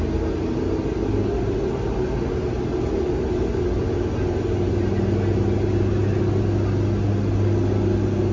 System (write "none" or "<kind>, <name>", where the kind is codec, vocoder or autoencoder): none